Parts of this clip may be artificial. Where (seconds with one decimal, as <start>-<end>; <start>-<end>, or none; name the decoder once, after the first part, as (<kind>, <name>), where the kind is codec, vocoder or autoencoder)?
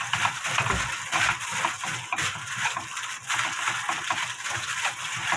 none